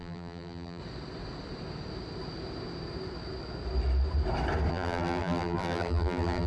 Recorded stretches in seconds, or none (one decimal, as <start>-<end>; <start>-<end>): 0.8-4.7